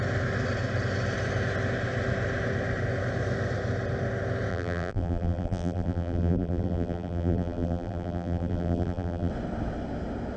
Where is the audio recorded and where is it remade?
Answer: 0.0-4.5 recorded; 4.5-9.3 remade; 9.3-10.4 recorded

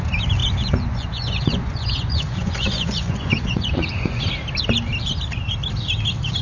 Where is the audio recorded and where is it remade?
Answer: 0.0-0.4 recorded; 0.4-4.2 remade; 4.2-6.4 recorded